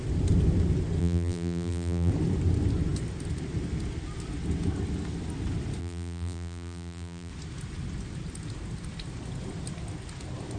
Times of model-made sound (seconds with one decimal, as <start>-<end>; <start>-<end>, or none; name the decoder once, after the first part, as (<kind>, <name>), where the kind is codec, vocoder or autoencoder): 1.0-2.1 (vocoder, BigVGAN v2); 5.8-7.3